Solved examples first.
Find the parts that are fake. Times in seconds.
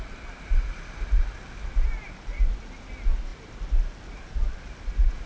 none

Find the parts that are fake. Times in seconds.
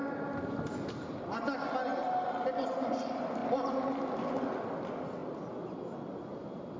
none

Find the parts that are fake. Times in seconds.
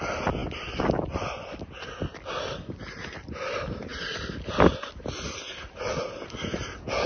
none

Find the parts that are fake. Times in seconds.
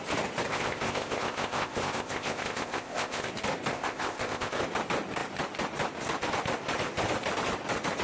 0.5-3.3 (codec, ZipCodec); 3.7-4.6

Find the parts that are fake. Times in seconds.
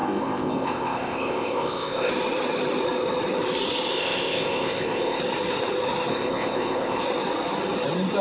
0.0-2.1 (codec, ZipCodec); 3.9-5.2; 6.1-7.0